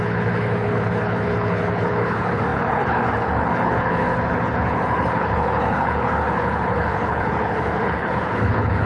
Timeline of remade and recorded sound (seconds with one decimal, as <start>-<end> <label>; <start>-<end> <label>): 0.0-8.9 remade